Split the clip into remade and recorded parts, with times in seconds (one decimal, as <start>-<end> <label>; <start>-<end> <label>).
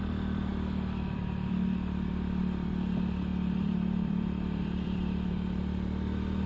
0.0-0.5 recorded; 0.5-2.7 remade; 2.7-3.3 recorded; 3.3-5.6 remade; 5.6-6.5 recorded